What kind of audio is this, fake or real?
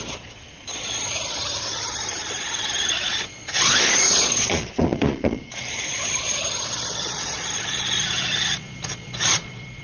fake